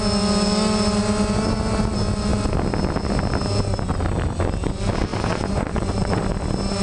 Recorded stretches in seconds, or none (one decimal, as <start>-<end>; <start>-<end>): 0.0-5.1; 6.2-6.8